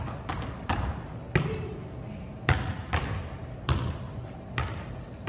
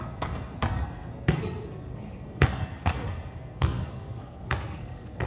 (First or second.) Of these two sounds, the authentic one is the first